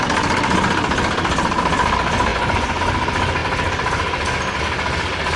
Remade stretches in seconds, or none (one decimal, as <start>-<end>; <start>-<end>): 2.3-2.8